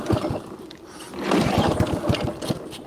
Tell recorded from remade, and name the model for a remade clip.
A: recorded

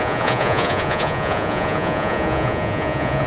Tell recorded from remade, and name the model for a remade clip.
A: remade, vocoder, Vocos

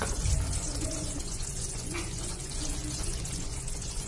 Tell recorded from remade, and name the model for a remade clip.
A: remade, vocoder, Vocos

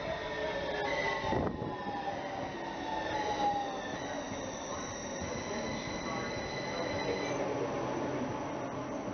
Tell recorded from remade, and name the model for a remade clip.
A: recorded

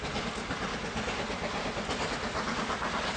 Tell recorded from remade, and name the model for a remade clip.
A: recorded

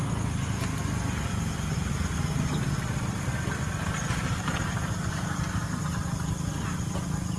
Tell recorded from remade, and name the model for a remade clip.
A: recorded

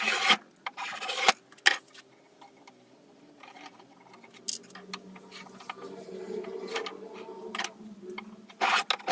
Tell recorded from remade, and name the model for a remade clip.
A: recorded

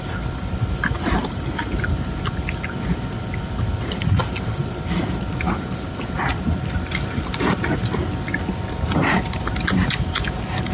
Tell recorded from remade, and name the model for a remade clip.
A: recorded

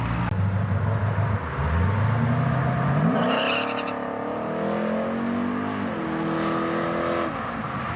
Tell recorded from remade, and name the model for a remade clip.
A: recorded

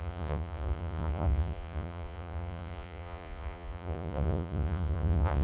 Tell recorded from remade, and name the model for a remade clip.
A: remade, vocoder, Vocos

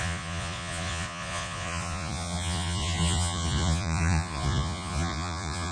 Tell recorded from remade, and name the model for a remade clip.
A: remade, vocoder, Vocos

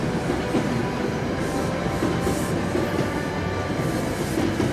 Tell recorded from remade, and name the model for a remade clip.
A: recorded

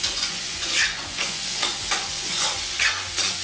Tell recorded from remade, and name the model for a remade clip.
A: remade, vocoder, Vocos